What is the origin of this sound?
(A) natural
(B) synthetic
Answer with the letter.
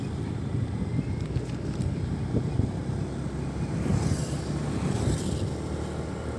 A